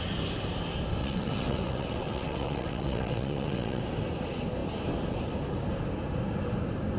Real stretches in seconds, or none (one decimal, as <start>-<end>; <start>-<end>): 0.0-1.0; 3.8-7.0